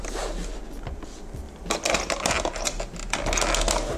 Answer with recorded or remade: recorded